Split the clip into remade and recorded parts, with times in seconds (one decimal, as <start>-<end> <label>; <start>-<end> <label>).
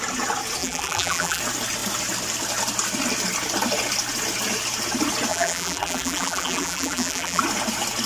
0.0-0.6 recorded; 0.6-1.4 remade; 1.4-5.3 recorded; 5.3-7.4 remade; 7.4-8.1 recorded